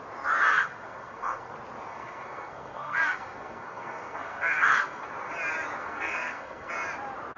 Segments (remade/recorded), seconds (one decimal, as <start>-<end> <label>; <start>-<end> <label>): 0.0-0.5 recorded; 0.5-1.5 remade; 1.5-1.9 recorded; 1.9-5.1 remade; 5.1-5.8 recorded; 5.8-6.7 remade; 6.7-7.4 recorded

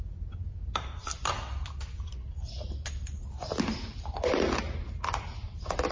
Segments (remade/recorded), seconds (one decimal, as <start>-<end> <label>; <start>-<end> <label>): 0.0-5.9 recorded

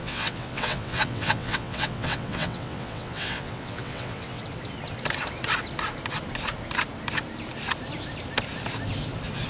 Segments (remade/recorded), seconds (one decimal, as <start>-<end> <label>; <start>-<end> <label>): 0.0-4.4 remade; 4.4-9.5 recorded

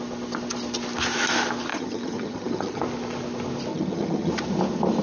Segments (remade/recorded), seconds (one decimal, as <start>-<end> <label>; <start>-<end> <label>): 0.0-1.7 recorded; 1.7-2.8 remade; 2.8-3.7 recorded; 3.7-4.3 remade; 4.3-5.0 recorded

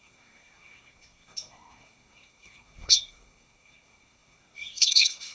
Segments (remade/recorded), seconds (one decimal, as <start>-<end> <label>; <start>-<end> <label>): 0.0-5.3 remade

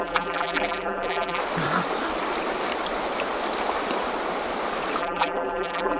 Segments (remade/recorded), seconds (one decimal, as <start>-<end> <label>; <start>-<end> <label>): 0.0-1.4 remade; 1.4-5.0 recorded; 5.0-6.0 remade